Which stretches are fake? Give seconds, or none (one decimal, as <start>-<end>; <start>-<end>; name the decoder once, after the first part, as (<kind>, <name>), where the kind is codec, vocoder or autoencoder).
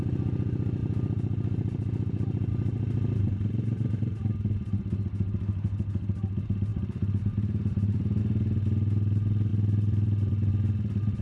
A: 0.8-2.5 (vocoder, BigVGAN v2); 6.7-8.2; 9.5-10.5